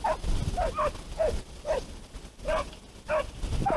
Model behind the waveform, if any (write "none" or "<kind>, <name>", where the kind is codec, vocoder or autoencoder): none